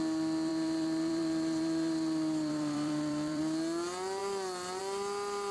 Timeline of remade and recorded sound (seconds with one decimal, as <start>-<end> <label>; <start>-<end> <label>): 0.0-0.5 recorded; 0.5-3.4 remade; 3.4-5.5 recorded